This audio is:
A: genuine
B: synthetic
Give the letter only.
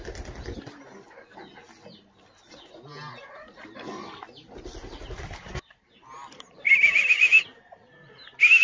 A